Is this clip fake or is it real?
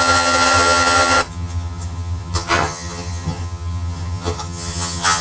fake